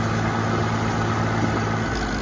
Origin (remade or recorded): recorded